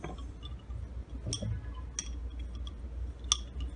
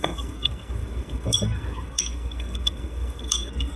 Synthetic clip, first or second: second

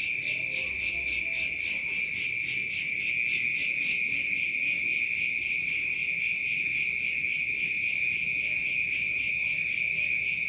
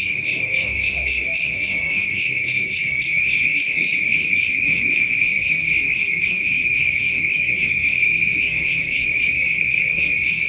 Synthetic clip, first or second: second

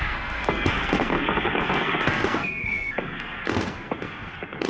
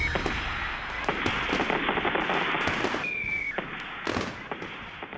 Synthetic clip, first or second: first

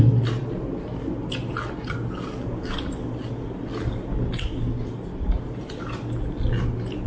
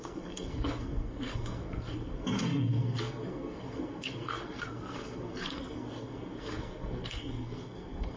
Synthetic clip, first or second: second